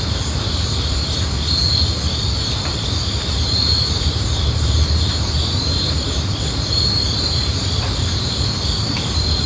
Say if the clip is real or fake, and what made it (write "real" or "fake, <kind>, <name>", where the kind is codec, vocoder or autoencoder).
fake, vocoder, BigVGAN v2